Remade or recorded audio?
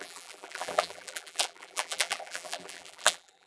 remade